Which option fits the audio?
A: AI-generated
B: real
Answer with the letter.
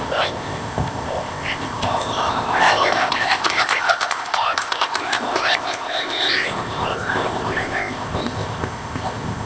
A